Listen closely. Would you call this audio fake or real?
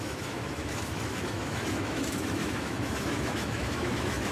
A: fake